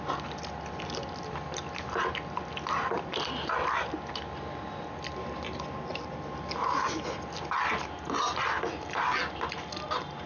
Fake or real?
real